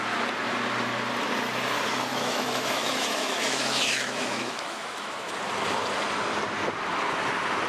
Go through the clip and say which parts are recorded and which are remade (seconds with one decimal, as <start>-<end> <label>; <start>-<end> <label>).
0.0-2.1 recorded; 2.1-5.3 remade; 5.3-7.7 recorded